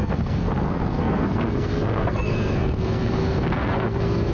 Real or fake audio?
fake